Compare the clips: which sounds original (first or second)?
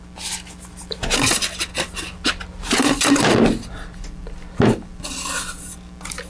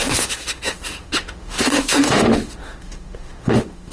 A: first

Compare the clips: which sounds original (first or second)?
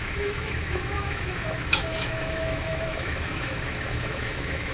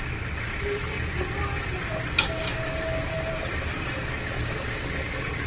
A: second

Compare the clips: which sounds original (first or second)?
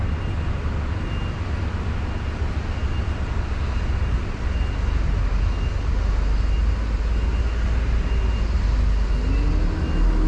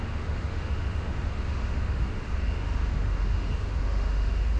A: first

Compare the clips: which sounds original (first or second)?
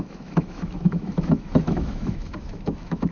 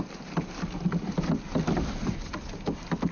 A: second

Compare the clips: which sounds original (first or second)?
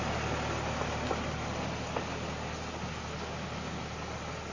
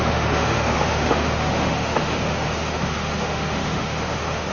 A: first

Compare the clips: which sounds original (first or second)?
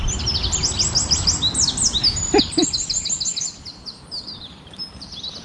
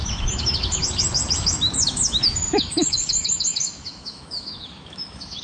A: first